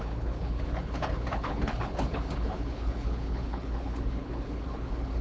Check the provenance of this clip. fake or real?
fake